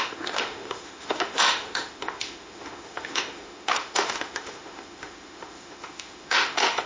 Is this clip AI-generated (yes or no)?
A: yes